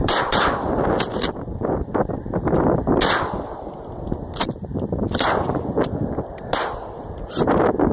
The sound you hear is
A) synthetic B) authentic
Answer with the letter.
B